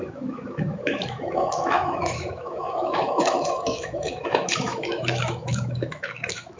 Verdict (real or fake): fake